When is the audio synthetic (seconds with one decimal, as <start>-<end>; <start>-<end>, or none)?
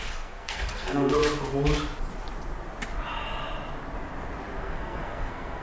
0.0-1.2; 4.6-5.6